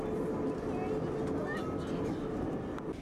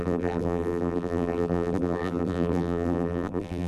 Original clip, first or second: first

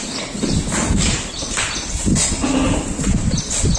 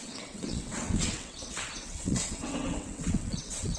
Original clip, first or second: first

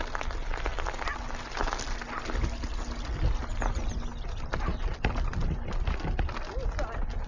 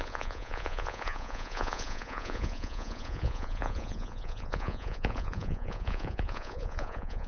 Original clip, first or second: first